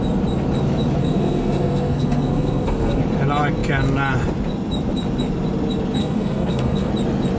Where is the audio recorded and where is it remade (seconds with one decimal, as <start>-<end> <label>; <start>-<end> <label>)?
0.0-1.0 recorded; 1.0-3.0 remade; 3.0-6.0 recorded; 6.0-6.9 remade; 6.9-7.4 recorded

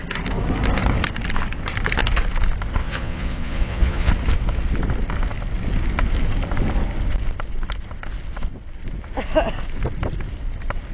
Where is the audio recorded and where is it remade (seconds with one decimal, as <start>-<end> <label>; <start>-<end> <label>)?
0.0-2.8 recorded; 2.8-4.1 remade; 4.1-10.9 recorded

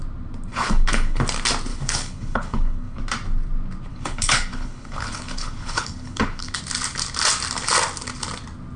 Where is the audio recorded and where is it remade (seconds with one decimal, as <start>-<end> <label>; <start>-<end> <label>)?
0.0-0.5 recorded; 0.5-1.2 remade; 1.2-1.7 recorded; 1.7-3.0 remade; 3.0-3.9 recorded; 3.9-6.6 remade; 6.6-8.8 recorded

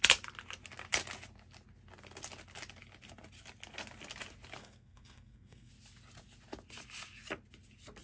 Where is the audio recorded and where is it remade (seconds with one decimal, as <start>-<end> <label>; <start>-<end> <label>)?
0.0-4.6 recorded; 4.6-5.7 remade; 5.7-8.0 recorded

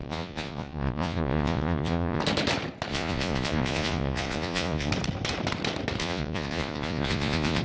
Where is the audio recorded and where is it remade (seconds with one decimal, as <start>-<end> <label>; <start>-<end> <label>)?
0.0-2.2 remade; 2.2-2.9 recorded; 2.9-4.9 remade; 4.9-6.0 recorded; 6.0-7.6 remade

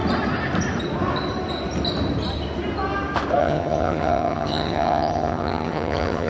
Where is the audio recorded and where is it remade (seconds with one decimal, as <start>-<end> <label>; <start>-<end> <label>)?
0.0-3.4 recorded; 3.4-6.3 remade

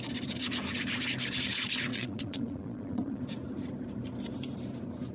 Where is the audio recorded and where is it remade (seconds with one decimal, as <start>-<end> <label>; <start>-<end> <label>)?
0.0-1.9 recorded; 1.9-3.2 remade; 3.2-5.1 recorded

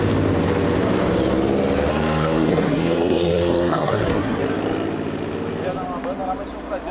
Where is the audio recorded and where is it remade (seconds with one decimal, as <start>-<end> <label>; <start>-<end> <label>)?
0.0-1.9 recorded; 1.9-4.4 remade; 4.4-6.9 recorded